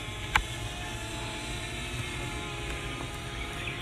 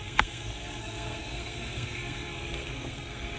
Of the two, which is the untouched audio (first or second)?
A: first